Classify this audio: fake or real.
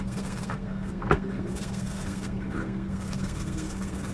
fake